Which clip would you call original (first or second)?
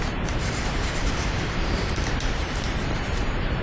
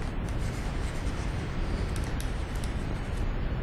second